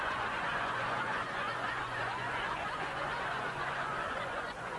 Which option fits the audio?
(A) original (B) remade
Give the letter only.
B